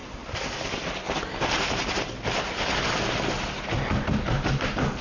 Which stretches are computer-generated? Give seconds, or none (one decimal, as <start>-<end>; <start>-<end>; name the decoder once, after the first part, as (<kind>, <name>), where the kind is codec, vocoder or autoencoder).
none